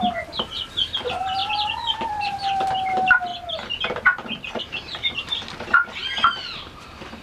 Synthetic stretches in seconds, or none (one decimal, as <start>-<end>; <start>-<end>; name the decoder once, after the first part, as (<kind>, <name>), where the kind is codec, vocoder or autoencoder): 0.0-3.3 (vocoder, BigVGAN v2); 4.6-6.0; 6.8-7.2